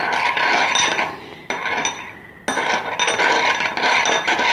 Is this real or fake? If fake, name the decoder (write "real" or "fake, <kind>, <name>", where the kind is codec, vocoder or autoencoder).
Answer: real